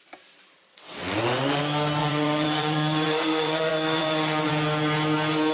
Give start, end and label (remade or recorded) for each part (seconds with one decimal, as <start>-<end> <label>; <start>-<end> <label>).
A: 0.0-0.7 recorded; 0.7-1.6 remade; 1.6-2.0 recorded; 2.0-4.5 remade; 4.5-5.5 recorded